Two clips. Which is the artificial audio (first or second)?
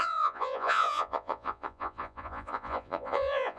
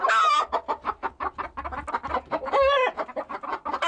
first